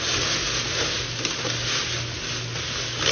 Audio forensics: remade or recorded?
recorded